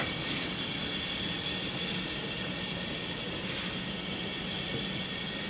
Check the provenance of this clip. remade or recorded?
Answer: recorded